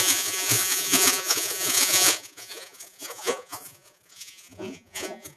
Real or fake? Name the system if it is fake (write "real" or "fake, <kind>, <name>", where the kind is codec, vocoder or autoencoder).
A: fake, vocoder, Vocos